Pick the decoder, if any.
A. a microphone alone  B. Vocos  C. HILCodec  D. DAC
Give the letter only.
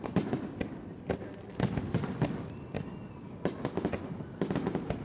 A